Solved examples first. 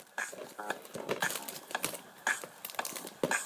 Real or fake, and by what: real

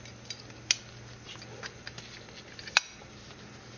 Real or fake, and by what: real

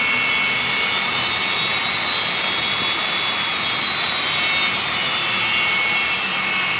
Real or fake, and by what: real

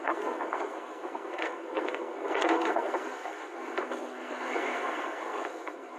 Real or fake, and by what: fake, codec, SNAC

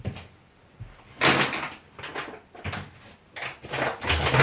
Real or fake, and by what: real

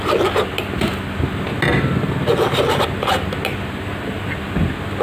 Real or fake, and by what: real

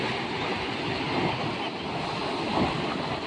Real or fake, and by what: real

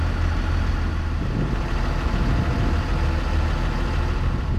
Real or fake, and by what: real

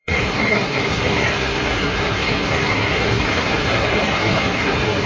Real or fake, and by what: fake, codec, SNAC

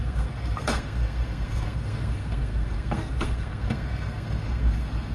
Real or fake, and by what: fake, codec, SNAC